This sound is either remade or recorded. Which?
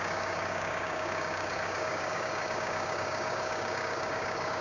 remade